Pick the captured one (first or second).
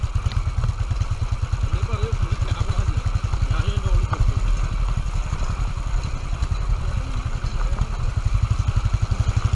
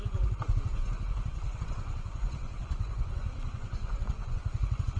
first